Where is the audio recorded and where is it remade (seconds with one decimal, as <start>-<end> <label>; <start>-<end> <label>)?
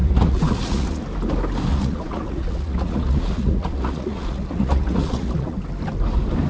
0.0-1.0 remade; 1.0-1.7 recorded; 1.7-5.6 remade; 5.6-6.5 recorded